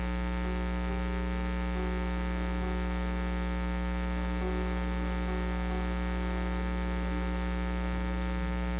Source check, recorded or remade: recorded